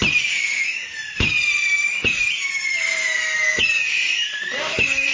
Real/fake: fake